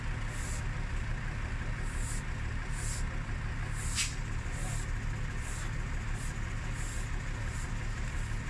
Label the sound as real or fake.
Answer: real